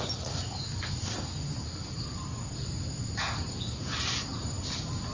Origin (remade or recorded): recorded